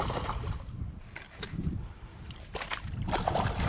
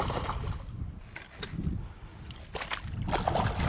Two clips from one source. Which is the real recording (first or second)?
second